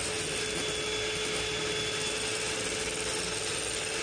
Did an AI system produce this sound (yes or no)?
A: no